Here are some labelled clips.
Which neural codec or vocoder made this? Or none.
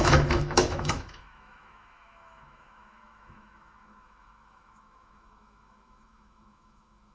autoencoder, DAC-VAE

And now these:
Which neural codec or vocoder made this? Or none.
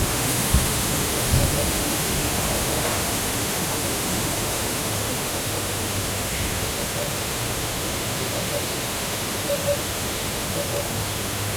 autoencoder, DAC-VAE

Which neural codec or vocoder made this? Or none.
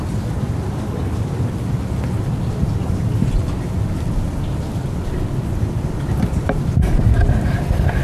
none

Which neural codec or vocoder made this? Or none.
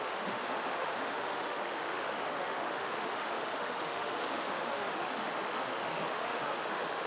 autoencoder, DAC-VAE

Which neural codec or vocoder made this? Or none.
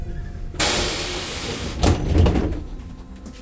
none